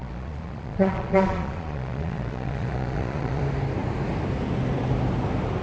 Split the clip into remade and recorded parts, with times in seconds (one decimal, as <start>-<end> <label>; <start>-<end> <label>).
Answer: 0.0-3.4 remade; 3.4-5.6 recorded